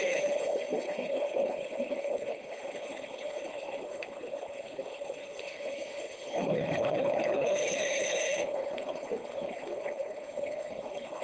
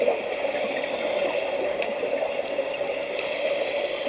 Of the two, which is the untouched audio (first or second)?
second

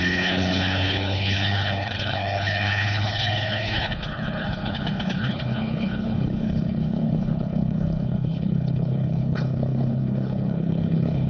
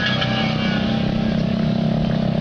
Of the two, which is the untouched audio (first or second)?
second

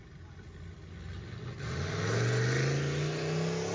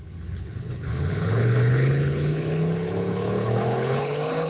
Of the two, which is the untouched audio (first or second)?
first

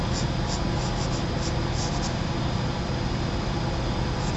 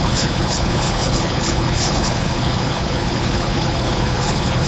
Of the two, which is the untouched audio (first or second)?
first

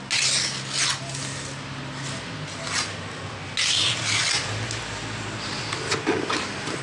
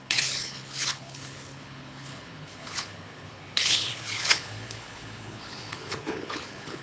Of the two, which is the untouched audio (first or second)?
first